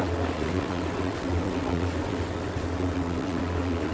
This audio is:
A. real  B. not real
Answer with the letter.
B